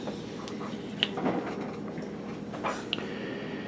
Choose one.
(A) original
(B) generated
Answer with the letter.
A